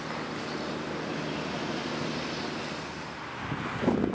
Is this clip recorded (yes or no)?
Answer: yes